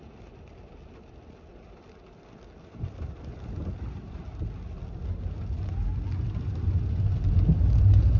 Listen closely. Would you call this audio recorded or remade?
recorded